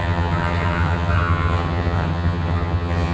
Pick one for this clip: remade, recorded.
remade